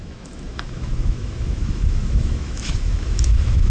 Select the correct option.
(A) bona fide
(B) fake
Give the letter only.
B